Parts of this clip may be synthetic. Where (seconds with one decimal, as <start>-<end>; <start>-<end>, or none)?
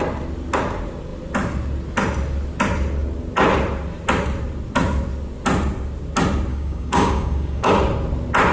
6.5-7.7